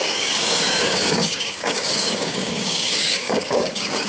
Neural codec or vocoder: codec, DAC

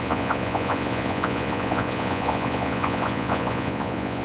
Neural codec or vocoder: vocoder, Vocos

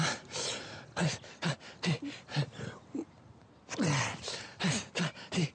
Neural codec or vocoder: none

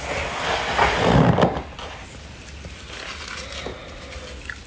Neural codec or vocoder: none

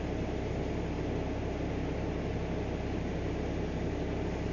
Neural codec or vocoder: none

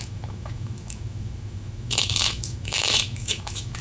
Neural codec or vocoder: autoencoder, DAC-VAE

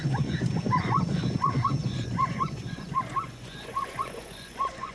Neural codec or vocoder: vocoder, Vocos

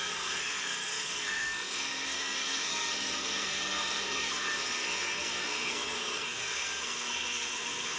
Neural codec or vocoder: codec, SNAC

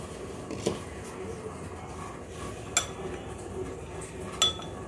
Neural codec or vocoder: none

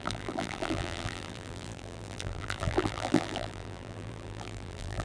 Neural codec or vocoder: vocoder, BigVGAN v2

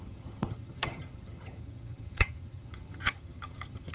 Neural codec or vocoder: vocoder, HiFi-GAN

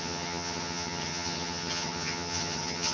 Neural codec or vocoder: vocoder, HiFi-GAN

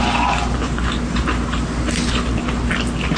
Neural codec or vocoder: none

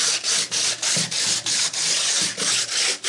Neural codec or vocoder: none